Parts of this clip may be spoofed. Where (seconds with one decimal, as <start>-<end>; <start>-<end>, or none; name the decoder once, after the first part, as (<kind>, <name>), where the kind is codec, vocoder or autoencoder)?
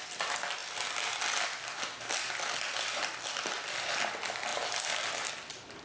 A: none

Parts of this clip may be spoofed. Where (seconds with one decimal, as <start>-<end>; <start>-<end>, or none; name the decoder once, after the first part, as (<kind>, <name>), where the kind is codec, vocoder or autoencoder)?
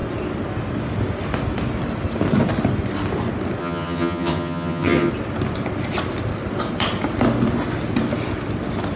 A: 3.6-5.1 (vocoder, HiFi-GAN)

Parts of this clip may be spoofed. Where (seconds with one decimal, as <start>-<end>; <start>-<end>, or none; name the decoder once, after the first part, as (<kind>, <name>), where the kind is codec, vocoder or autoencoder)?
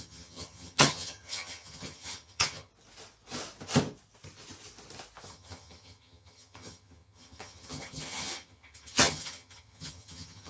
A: 0.0-2.7 (vocoder, HiFi-GAN); 5.3-10.5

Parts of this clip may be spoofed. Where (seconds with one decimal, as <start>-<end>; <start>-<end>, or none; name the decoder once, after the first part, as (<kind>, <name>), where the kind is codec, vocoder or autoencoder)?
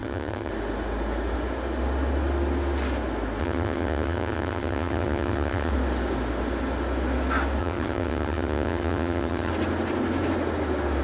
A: 0.0-0.5 (vocoder, HiFi-GAN); 3.4-5.7; 7.6-9.5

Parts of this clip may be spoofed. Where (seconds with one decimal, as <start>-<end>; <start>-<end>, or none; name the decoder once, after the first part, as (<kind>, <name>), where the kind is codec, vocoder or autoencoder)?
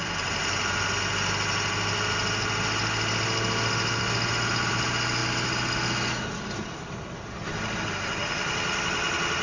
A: none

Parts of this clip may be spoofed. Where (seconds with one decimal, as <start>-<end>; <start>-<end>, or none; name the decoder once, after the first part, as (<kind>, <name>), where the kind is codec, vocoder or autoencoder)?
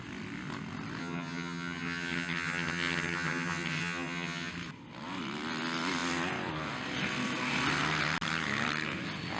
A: 1.0-4.5 (vocoder, HiFi-GAN)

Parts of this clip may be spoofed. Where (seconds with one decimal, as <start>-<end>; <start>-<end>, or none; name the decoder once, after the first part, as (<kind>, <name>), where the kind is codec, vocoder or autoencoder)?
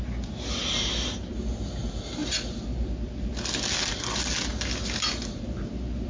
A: none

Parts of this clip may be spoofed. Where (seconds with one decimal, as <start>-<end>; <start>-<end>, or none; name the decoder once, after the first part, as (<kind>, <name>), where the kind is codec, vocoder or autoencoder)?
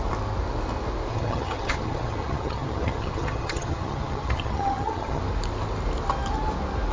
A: 1.1-5.2 (vocoder, HiFi-GAN)